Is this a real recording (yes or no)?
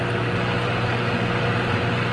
yes